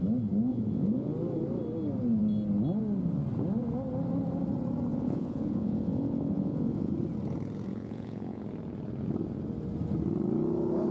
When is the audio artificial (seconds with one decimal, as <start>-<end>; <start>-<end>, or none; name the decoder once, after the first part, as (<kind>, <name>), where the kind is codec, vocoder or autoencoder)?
0.5-1.1 (vocoder, Vocos); 4.9-6.9; 7.7-8.4